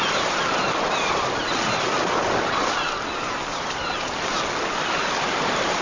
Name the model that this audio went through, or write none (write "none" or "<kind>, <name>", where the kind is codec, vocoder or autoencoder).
none